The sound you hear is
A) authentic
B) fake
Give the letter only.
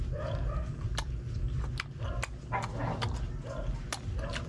A